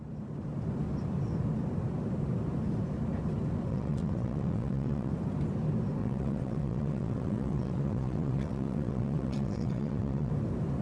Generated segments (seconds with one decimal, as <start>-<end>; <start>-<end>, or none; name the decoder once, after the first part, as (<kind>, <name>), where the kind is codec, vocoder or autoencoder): 3.7-5.1 (vocoder, WaveNeXt); 6.0-10.3